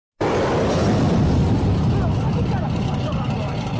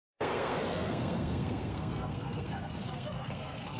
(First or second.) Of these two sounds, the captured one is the first